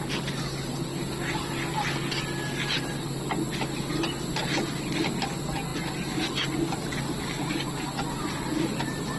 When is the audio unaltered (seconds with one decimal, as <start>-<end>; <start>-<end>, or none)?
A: 0.0-9.2